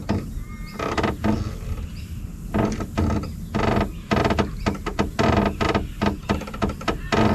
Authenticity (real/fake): real